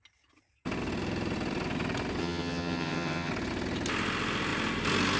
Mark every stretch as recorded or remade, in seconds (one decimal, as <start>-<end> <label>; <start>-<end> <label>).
0.0-2.2 recorded; 2.2-3.3 remade; 3.3-5.2 recorded